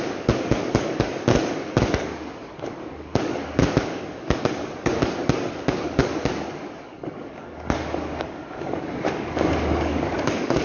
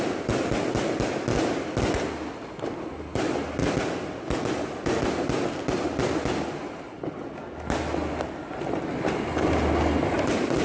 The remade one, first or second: first